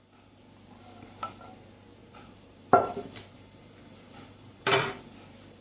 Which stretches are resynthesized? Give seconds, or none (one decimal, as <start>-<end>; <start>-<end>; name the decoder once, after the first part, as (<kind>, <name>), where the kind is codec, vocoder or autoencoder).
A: 2.0-4.6 (vocoder, BigVGAN v2)